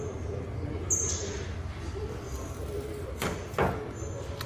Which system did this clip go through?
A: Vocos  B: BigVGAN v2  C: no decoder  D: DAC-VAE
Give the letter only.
C